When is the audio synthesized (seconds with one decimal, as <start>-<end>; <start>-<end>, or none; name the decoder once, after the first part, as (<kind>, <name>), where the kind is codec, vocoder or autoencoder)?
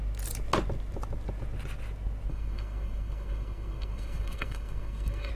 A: 2.3-5.3 (codec, SNAC)